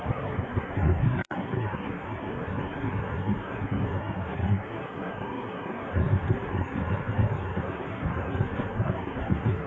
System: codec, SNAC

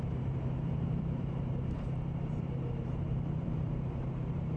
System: vocoder, BigVGAN v2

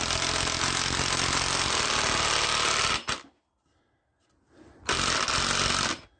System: none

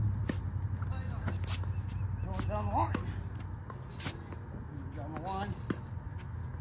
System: none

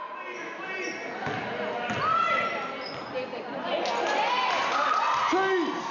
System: none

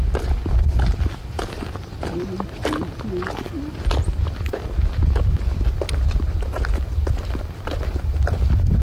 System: none